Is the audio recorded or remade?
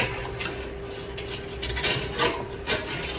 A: recorded